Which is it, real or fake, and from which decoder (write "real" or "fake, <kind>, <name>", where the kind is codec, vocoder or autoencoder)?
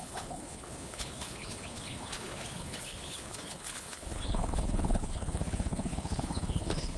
fake, codec, HILCodec